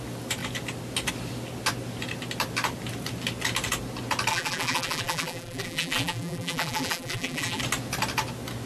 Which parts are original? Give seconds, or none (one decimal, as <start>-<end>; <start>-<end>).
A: 0.0-4.3; 7.6-8.7